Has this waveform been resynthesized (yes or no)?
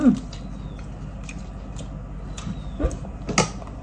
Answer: no